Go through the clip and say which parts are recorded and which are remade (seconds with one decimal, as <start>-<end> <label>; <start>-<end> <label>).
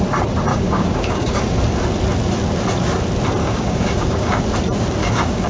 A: 0.0-0.5 recorded; 0.5-1.6 remade; 1.6-3.4 recorded; 3.4-4.4 remade; 4.4-5.0 recorded; 5.0-5.5 remade